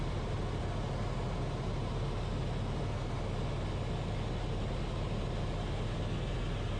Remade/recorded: recorded